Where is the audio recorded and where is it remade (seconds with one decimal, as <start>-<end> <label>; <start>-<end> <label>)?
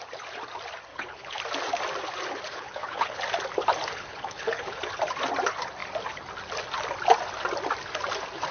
0.0-0.9 recorded; 0.9-1.4 remade; 1.4-2.5 recorded; 2.5-3.2 remade; 3.2-3.9 recorded; 3.9-4.9 remade; 4.9-8.5 recorded